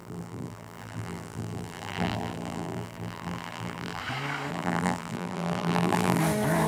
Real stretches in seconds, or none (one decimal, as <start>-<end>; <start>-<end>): 4.0-4.5; 6.2-6.7